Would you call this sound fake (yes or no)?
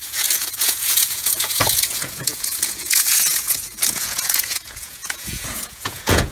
yes